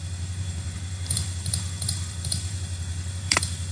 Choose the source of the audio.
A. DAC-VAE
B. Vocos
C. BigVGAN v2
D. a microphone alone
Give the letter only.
C